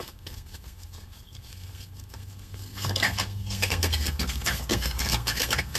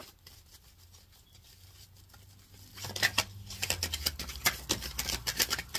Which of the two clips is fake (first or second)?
first